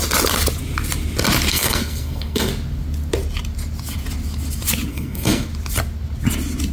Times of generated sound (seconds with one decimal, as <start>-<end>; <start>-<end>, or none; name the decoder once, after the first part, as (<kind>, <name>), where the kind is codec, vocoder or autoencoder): 1.5-2.5 (codec, SNAC); 4.9-5.5